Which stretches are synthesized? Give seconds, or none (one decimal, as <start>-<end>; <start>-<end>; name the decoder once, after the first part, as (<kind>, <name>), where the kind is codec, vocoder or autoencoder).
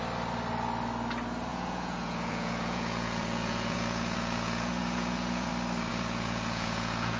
1.5-5.5 (vocoder, Vocos); 5.9-7.2